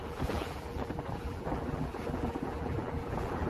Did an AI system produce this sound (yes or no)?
yes